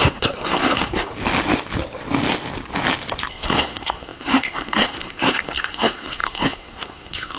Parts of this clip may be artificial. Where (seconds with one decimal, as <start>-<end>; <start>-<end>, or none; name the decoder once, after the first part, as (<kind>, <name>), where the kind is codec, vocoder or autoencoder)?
0.0-1.1 (codec, SNAC); 3.3-7.4